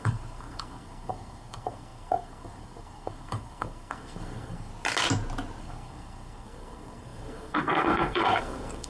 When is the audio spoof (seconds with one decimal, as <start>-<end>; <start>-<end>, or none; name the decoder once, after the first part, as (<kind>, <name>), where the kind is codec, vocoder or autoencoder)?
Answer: 0.0-4.7 (codec, SNAC); 5.6-8.9